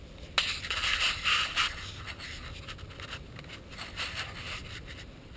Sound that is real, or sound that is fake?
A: real